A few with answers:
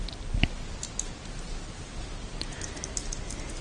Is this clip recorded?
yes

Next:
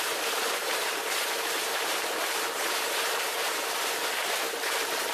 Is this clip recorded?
no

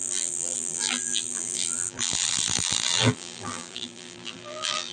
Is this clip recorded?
no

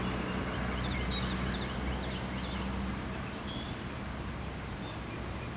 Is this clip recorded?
yes